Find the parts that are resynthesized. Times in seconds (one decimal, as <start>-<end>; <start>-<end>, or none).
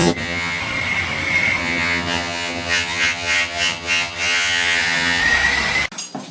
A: 0.0-0.6; 1.6-5.2